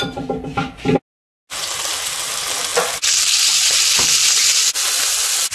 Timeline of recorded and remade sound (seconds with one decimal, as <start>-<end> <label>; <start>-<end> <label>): 0.0-5.5 recorded